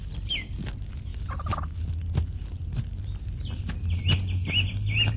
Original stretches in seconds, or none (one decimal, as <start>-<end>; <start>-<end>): 0.0-5.2